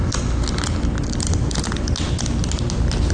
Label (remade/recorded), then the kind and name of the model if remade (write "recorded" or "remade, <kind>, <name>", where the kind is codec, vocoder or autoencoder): recorded